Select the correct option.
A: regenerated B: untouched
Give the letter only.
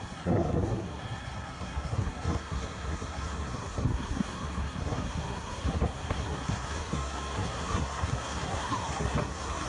A